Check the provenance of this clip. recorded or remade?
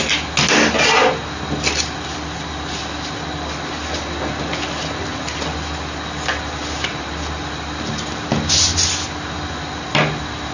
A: recorded